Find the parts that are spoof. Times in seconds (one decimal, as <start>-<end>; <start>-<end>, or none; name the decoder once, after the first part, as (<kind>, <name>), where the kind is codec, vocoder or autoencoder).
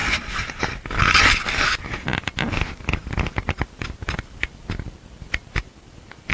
none